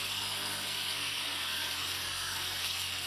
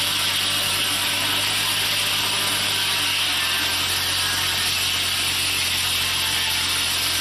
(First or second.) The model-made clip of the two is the first